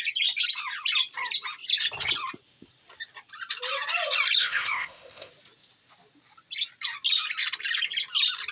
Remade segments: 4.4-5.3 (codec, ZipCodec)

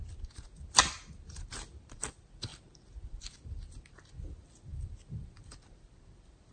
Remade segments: 1.8-2.5 (vocoder, BigVGAN v2); 3.2-6.5

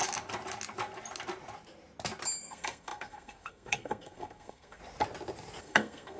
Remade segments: 2.4-4.8 (codec, SNAC); 5.6-6.2

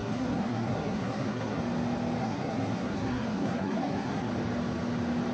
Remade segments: 0.0-1.6 (codec, SNAC); 2.2-4.3

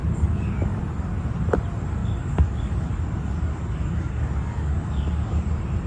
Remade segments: 0.0-0.8 (codec, DAC); 2.0-5.5

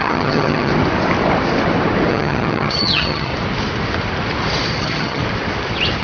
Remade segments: 0.0-0.7 (vocoder, HiFi-GAN); 2.1-3.3; 4.8-5.2

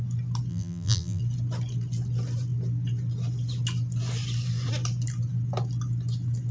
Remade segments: 0.5-1.2 (vocoder, BigVGAN v2)